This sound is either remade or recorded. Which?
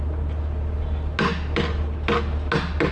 recorded